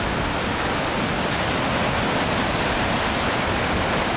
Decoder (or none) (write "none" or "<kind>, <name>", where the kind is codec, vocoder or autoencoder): none